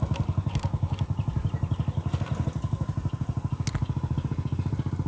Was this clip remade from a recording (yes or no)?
no